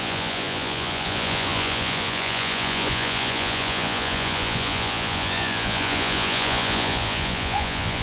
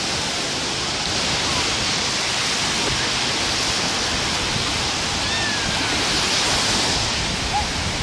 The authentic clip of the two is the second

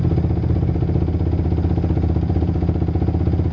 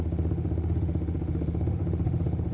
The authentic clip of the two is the first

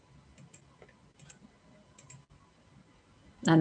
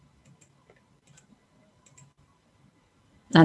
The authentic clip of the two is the first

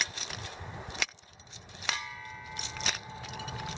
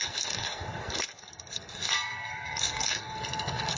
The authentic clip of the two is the first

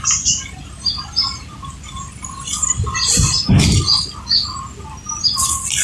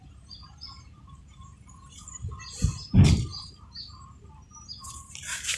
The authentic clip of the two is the first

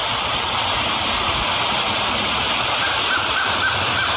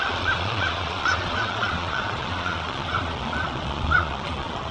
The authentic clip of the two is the first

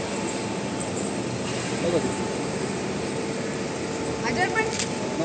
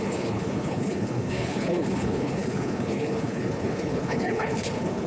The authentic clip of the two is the first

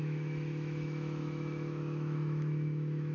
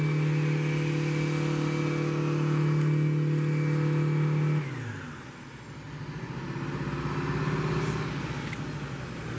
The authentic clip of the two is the second